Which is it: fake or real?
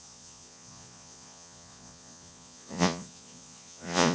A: fake